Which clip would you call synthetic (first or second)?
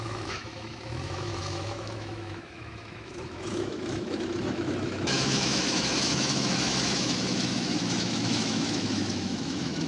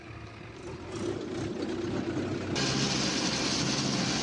first